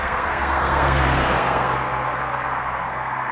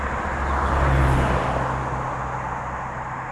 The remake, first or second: first